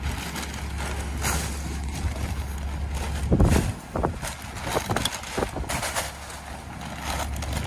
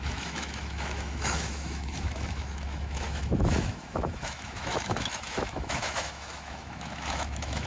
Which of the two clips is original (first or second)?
first